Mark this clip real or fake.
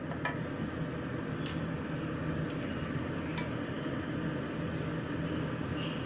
real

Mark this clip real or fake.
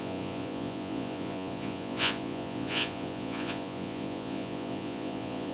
fake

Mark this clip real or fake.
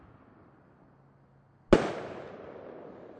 real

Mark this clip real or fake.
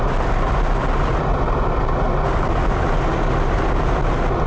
real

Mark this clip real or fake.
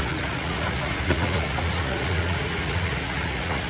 fake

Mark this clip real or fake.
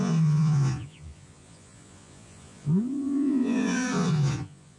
fake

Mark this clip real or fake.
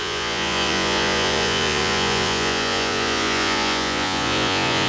fake